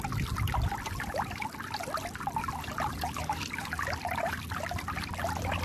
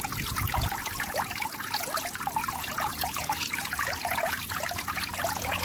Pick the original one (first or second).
first